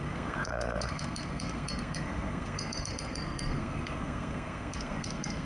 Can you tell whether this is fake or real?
fake